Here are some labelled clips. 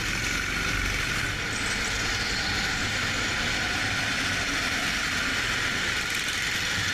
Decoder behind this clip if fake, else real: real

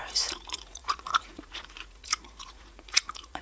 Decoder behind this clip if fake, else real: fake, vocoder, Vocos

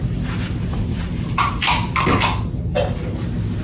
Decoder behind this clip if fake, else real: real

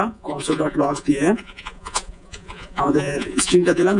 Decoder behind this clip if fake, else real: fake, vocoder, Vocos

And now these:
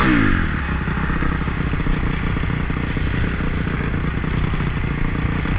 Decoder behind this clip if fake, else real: real